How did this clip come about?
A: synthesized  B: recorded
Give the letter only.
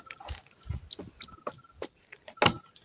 B